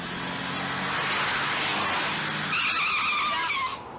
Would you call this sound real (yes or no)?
yes